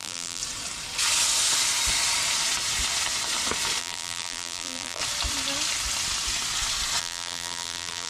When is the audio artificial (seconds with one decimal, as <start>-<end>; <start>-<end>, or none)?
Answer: 0.0-0.4; 3.8-5.0; 7.0-8.1